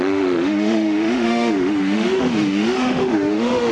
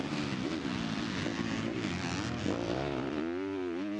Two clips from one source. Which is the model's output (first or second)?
first